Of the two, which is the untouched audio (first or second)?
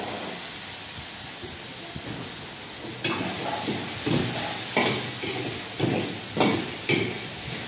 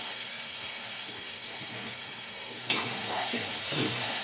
first